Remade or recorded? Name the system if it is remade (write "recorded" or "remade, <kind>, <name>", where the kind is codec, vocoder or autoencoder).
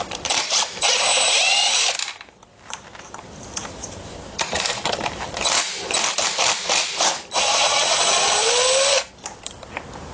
remade, vocoder, BigVGAN v2